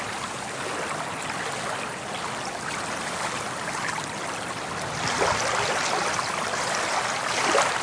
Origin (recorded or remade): recorded